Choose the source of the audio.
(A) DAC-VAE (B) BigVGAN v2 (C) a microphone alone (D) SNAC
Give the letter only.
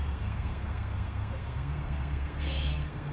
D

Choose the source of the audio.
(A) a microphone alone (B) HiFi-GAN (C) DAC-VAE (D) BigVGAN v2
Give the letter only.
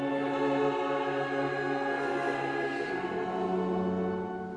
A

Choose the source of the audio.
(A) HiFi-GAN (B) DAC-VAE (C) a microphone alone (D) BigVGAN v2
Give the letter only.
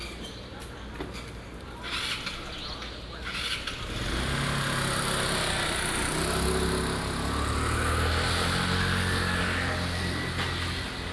C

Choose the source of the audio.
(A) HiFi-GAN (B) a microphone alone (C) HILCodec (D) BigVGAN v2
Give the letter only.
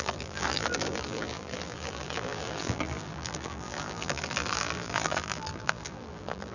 D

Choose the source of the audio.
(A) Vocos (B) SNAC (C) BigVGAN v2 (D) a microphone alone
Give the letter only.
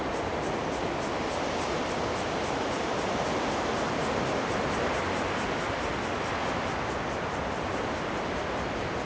D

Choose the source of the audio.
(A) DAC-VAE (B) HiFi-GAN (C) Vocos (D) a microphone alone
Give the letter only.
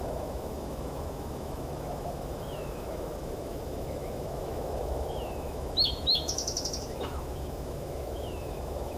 A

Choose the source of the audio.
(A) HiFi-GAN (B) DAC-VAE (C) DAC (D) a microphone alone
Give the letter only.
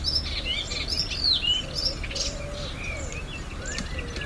D